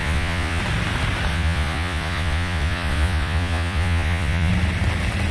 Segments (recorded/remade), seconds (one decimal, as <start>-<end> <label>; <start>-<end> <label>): 0.0-0.6 remade; 0.6-1.3 recorded; 1.3-4.5 remade; 4.5-5.3 recorded